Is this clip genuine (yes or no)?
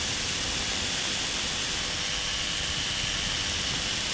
yes